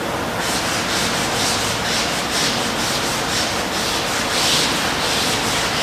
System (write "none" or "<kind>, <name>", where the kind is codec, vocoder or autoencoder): none